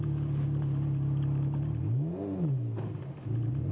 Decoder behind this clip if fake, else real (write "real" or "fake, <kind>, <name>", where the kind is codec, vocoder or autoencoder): real